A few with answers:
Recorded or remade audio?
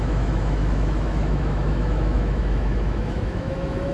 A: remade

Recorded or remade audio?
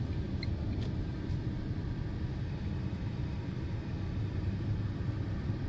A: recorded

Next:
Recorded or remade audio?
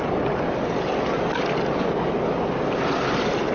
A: recorded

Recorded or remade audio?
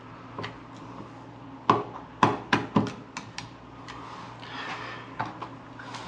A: recorded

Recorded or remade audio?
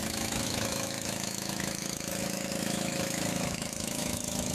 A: remade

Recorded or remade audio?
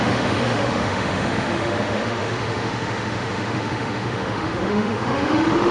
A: remade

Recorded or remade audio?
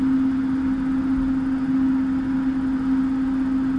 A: recorded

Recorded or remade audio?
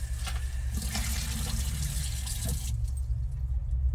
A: recorded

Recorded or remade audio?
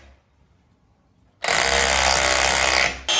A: recorded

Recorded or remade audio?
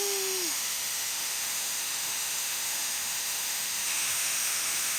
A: remade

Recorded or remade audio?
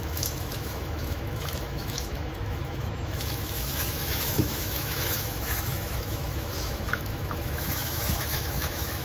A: remade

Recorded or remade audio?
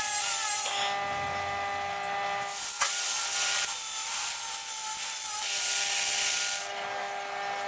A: recorded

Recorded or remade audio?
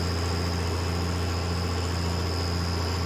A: recorded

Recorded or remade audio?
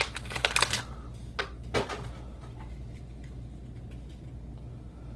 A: recorded